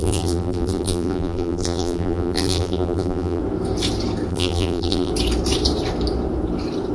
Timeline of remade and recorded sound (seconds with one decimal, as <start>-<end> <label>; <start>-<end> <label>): 0.0-3.4 remade; 3.4-4.3 recorded; 4.3-5.1 remade; 5.1-6.9 recorded